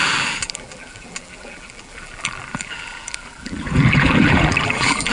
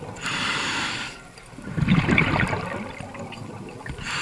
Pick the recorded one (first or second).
second